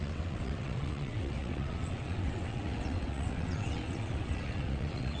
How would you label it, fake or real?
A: fake